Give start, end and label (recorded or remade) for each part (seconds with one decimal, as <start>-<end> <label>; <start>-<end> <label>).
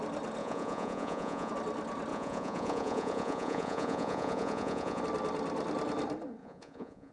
0.0-0.4 recorded; 0.4-1.5 remade; 1.5-2.1 recorded; 2.1-5.0 remade; 5.0-6.4 recorded; 6.4-7.1 remade